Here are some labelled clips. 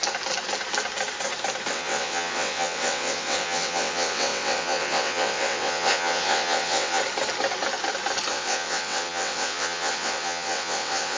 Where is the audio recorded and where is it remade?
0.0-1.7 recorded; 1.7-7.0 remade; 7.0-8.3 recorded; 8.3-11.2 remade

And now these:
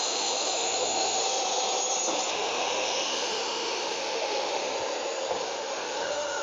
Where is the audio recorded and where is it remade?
0.0-1.2 remade; 1.2-2.3 recorded; 2.3-4.6 remade; 4.6-5.4 recorded; 5.4-6.4 remade

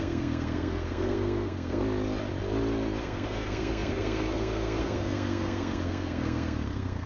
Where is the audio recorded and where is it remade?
0.0-1.8 remade; 1.8-3.0 recorded; 3.0-7.1 remade

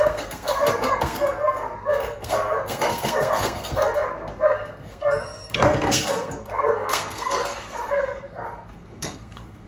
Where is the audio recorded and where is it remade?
0.0-9.7 remade

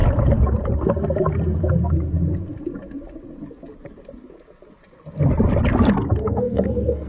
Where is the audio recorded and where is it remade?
0.0-6.2 recorded; 6.2-7.1 remade